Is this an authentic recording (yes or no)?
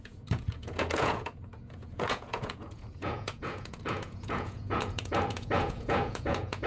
no